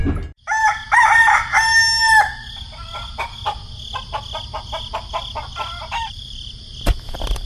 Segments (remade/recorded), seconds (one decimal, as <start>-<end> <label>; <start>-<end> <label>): 0.0-0.6 remade; 0.6-6.0 recorded; 6.0-6.8 remade; 6.8-7.5 recorded